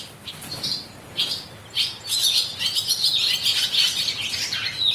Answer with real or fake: real